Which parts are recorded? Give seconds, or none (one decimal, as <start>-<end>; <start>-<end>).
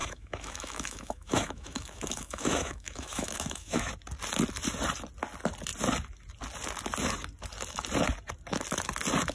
3.9-9.3